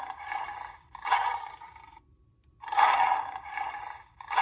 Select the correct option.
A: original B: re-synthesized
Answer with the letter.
A